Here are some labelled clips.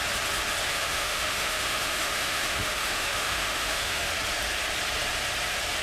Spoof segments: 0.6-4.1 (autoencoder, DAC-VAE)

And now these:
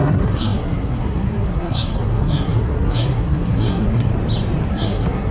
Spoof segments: 0.0-4.1 (codec, SNAC); 4.7-5.3

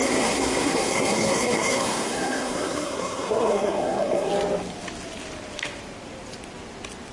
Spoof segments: 0.0-4.3 (codec, SNAC)

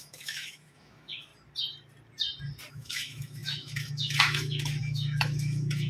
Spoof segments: 0.0-1.3 (autoencoder, DAC-VAE); 2.7-5.9